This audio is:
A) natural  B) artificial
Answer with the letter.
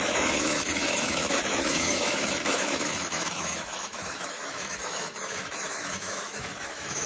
B